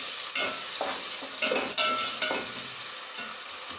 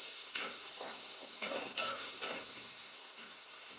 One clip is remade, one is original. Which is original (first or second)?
first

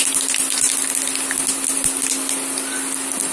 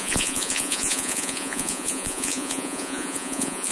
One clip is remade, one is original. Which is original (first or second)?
first